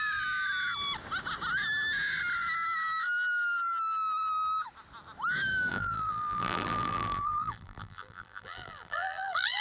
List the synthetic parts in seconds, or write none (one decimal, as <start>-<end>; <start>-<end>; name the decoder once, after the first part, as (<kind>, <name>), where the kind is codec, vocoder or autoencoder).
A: 5.7-9.6 (vocoder, BigVGAN v2)